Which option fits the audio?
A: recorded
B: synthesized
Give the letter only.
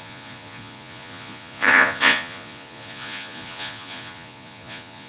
B